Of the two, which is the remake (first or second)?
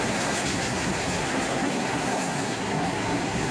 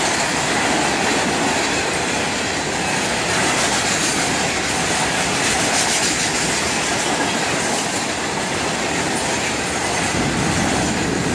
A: first